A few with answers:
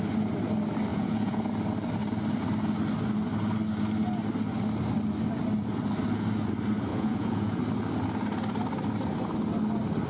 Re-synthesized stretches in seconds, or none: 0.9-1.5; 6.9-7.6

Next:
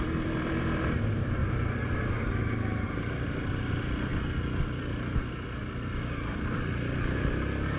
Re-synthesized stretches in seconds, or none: 0.0-1.4; 2.3-4.1

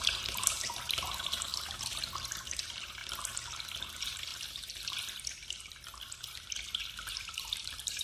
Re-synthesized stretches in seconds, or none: 0.0-3.0; 3.8-4.3; 7.1-8.0

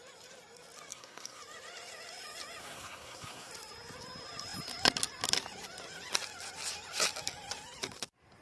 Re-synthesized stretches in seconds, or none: 0.9-1.4; 2.6-3.5

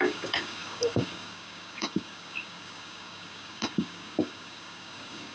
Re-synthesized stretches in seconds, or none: 0.0-5.3

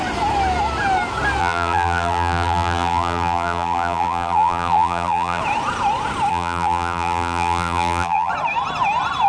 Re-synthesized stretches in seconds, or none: 1.4-5.4; 6.3-8.3